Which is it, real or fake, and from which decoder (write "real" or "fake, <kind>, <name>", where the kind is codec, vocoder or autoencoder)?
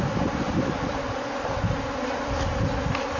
real